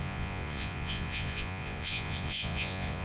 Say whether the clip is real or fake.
fake